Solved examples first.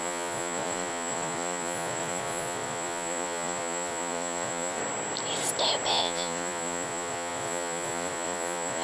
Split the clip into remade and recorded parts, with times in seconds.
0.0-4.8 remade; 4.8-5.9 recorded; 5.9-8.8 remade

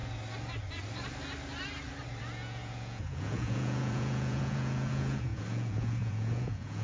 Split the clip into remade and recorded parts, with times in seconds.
0.0-2.2 recorded; 2.2-6.8 remade

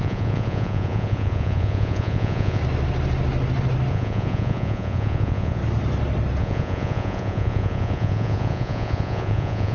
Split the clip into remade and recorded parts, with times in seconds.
0.0-2.6 remade; 2.6-3.9 recorded; 3.9-5.6 remade; 5.6-6.4 recorded; 6.4-9.7 remade

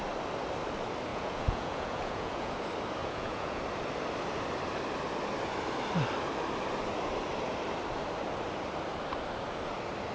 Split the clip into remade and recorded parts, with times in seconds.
0.0-1.1 recorded; 1.1-2.5 remade; 2.5-3.0 recorded; 3.0-3.6 remade; 3.6-10.1 recorded

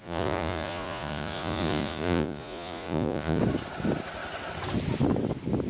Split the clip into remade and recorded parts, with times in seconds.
0.0-3.4 remade; 3.4-5.7 recorded

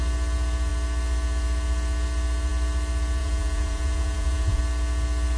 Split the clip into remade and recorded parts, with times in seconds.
0.0-3.2 recorded; 3.2-4.6 remade; 4.6-5.4 recorded

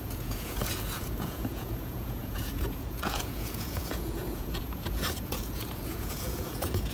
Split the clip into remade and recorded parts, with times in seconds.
0.0-6.9 remade

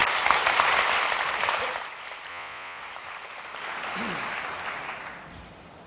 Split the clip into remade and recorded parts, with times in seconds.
0.0-2.3 recorded; 2.3-2.8 remade; 2.8-5.9 recorded